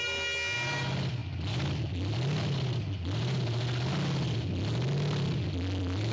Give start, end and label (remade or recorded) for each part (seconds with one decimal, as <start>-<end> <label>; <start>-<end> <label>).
0.0-6.1 recorded